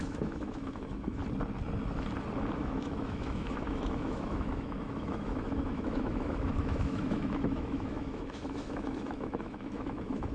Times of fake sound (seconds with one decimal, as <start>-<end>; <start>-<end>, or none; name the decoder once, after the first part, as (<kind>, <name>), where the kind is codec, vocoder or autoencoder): 0.0-1.2 (autoencoder, DAC-VAE); 2.5-10.3